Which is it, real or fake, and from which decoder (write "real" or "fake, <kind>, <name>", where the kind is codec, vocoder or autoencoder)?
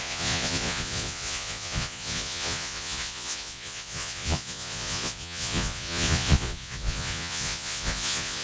fake, vocoder, Vocos